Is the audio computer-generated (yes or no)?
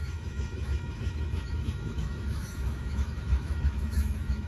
yes